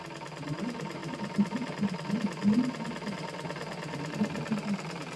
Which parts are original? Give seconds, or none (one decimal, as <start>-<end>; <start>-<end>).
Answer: 0.0-5.2